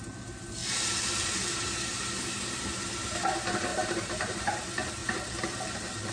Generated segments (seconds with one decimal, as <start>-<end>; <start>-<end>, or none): 3.7-4.4